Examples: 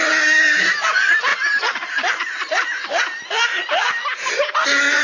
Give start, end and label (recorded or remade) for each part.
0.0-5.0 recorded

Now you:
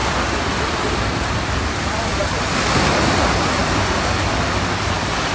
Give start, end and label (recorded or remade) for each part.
0.0-5.3 recorded

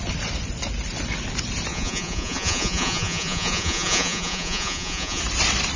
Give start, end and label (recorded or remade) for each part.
0.0-1.7 recorded; 1.7-5.2 remade; 5.2-5.8 recorded

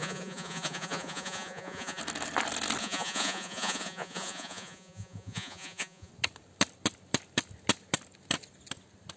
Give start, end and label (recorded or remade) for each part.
0.0-2.0 remade; 2.0-2.8 recorded; 2.8-6.1 remade; 6.1-9.2 recorded

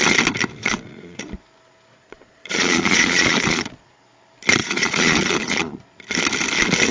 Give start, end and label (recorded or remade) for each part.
0.0-0.6 recorded; 0.6-1.2 remade; 1.2-1.9 recorded; 1.9-4.0 remade; 4.0-4.6 recorded; 4.6-5.8 remade; 5.8-6.9 recorded

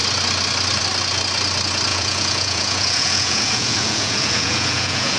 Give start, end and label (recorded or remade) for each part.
0.0-1.9 recorded; 1.9-5.2 remade

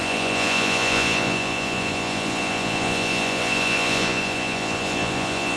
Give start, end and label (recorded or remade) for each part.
0.0-5.6 remade

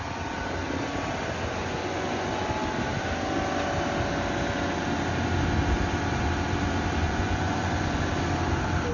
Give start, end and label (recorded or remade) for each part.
0.0-1.6 recorded; 1.6-2.5 remade; 2.5-7.0 recorded; 7.0-8.1 remade; 8.1-8.9 recorded